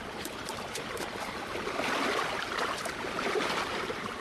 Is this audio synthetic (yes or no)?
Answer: no